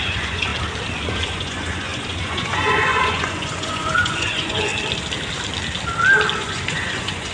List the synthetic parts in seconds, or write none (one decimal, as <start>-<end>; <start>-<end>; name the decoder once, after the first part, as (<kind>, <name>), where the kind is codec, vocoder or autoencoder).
0.0-0.5 (vocoder, Vocos); 1.0-4.7; 6.4-7.3